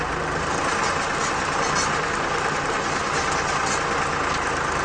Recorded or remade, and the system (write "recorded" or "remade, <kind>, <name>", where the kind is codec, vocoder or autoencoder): recorded